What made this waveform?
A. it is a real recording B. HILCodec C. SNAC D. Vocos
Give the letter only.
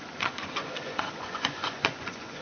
D